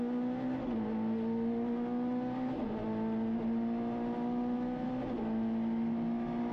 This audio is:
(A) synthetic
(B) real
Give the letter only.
B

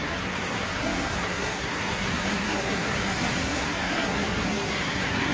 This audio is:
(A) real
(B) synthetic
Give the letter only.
B